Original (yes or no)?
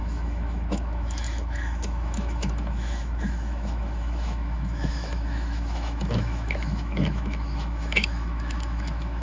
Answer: no